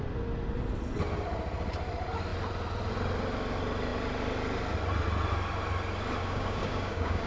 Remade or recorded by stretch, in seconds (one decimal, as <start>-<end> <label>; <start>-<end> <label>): 0.0-6.2 recorded; 6.2-7.3 remade